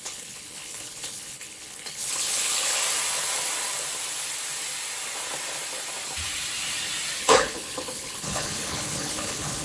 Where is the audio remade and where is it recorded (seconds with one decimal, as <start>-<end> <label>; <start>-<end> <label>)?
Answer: 0.0-2.8 remade; 2.8-7.2 recorded; 7.2-9.6 remade